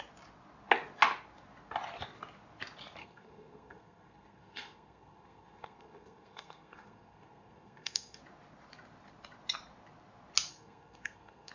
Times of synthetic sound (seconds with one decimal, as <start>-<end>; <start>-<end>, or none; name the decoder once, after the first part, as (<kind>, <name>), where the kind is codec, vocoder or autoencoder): 3.0-8.2 (codec, SNAC); 10.5-11.5